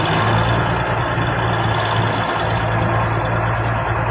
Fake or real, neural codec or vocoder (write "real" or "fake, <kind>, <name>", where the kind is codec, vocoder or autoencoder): real